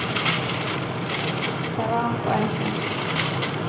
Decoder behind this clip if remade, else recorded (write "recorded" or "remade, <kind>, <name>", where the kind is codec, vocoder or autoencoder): remade, vocoder, BigVGAN v2